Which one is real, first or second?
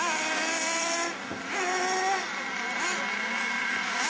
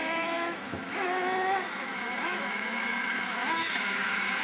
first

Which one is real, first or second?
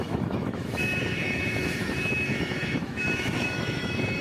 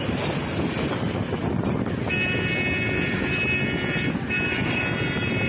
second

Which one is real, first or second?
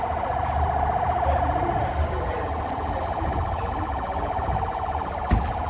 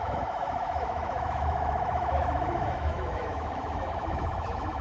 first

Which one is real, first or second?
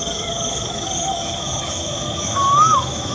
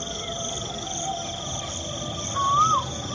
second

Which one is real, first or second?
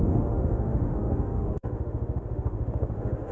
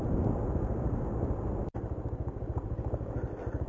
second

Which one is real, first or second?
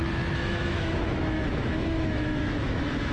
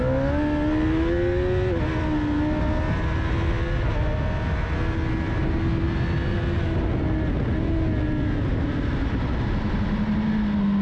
second